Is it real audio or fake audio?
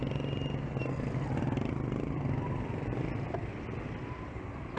real